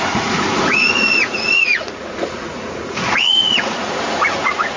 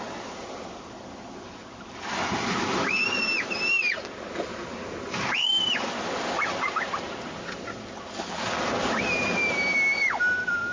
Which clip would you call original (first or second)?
second